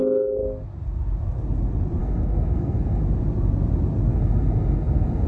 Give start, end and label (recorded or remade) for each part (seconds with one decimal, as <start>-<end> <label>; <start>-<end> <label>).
0.0-2.0 recorded; 2.0-3.0 remade; 3.0-4.1 recorded; 4.1-5.3 remade